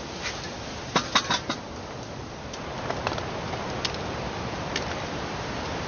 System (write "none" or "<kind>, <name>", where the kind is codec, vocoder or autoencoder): none